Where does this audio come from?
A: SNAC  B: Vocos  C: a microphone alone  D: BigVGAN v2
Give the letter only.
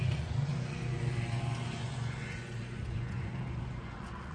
B